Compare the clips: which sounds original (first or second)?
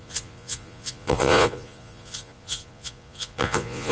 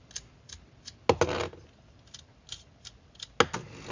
second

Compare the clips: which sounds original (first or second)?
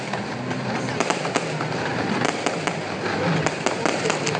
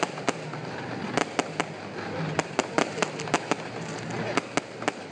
second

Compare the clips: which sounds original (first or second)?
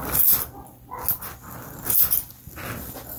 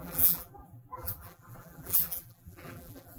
first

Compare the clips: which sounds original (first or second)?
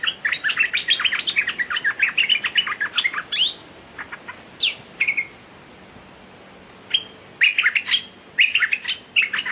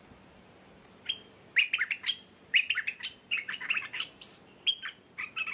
first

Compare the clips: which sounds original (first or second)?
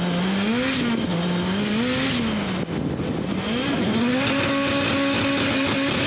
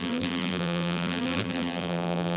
first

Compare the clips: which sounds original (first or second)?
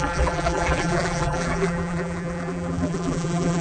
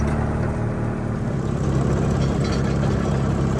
second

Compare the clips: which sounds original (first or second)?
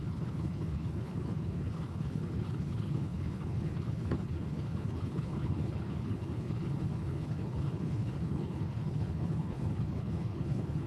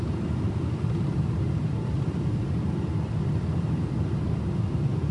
second